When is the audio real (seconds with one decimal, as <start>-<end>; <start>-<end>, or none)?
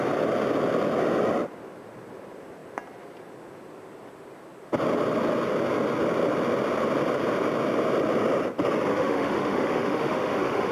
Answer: 0.0-8.9